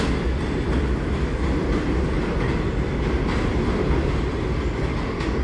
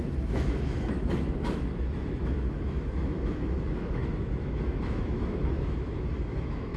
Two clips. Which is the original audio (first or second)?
first